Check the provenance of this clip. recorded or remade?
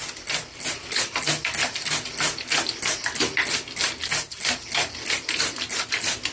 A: recorded